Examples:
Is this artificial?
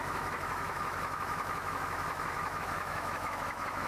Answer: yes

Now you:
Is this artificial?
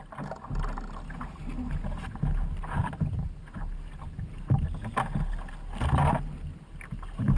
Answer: no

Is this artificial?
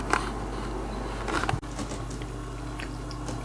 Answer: no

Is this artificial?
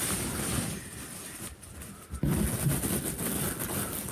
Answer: no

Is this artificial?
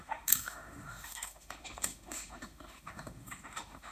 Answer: yes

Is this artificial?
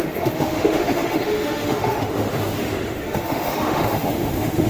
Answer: yes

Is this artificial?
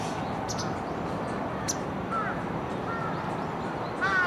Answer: no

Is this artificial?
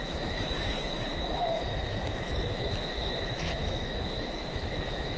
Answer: yes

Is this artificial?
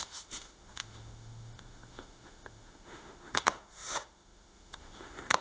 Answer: yes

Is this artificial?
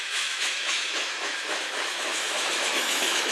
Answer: yes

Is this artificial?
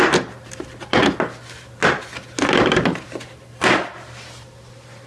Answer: no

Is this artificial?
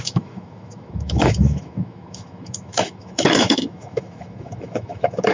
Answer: yes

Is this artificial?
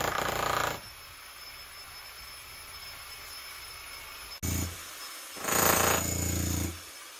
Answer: no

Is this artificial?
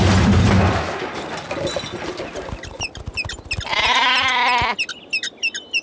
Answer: no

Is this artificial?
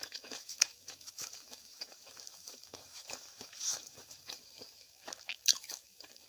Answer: yes